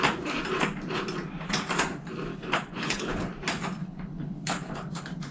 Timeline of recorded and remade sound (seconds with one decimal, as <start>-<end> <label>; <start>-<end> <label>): 0.0-2.3 recorded; 2.3-3.3 remade; 3.3-3.8 recorded; 3.8-5.3 remade